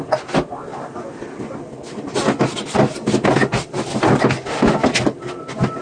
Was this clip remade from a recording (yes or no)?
no